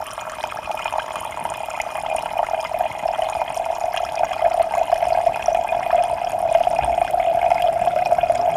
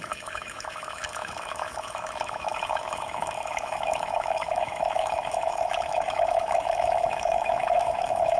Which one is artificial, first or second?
second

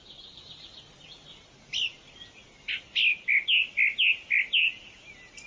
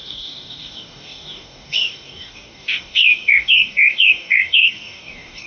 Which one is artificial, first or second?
second